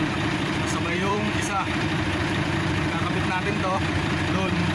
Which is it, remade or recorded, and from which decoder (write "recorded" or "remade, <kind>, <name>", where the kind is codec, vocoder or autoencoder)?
remade, vocoder, BigVGAN v2